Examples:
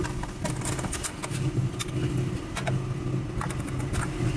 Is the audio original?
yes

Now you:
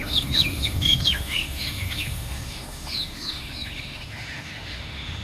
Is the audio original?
no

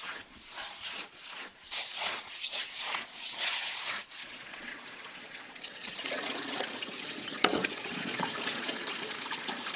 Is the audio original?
no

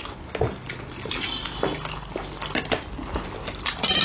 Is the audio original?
yes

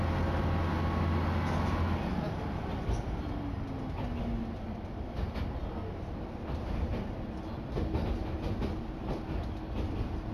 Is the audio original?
yes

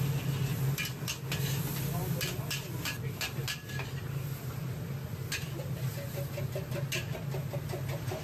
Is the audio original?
yes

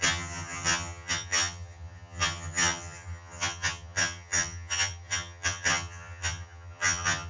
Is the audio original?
no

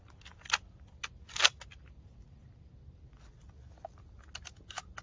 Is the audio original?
yes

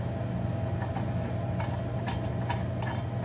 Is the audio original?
yes